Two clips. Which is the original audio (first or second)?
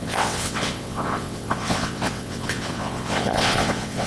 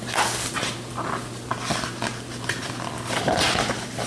second